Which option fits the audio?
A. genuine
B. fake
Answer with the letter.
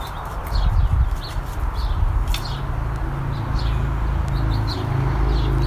A